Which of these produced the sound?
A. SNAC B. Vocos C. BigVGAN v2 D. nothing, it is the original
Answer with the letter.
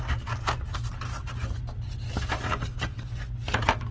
D